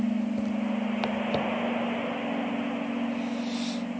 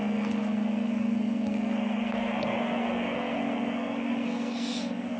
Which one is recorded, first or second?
first